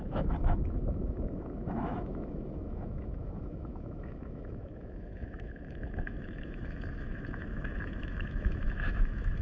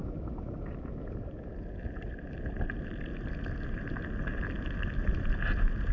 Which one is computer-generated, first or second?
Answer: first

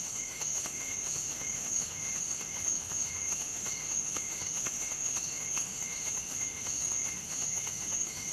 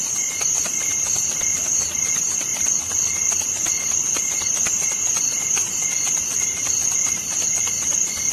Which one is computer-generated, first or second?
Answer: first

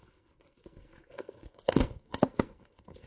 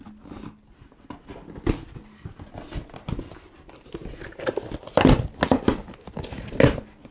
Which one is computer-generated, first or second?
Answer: first